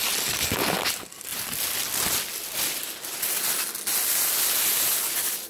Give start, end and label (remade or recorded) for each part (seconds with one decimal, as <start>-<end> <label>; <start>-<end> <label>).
0.0-5.5 recorded